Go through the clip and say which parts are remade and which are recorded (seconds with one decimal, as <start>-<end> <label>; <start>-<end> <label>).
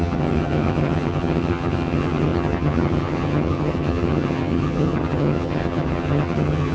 0.0-6.7 remade